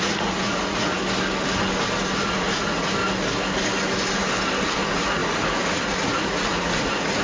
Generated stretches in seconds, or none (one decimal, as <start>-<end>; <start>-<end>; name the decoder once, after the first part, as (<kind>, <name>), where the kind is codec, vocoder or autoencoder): 0.0-1.0 (vocoder, Vocos); 2.2-3.0; 4.8-7.2